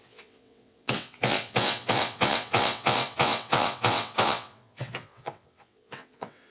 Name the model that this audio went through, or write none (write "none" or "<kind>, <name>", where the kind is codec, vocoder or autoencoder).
vocoder, WaveNeXt